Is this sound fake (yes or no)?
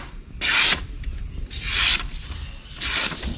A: no